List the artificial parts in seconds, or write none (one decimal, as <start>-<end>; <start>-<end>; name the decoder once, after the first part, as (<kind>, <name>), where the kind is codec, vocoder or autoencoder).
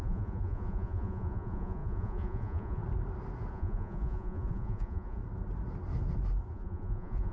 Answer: 0.0-2.8 (vocoder, Vocos); 3.5-5.2; 6.5-7.3